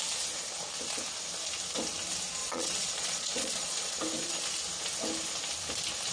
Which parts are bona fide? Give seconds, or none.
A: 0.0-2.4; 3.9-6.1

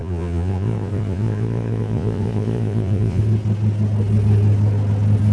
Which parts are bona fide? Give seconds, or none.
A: 3.2-5.3